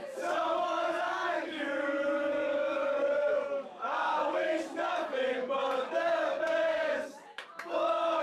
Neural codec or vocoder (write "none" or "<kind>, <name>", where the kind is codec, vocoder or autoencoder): codec, DAC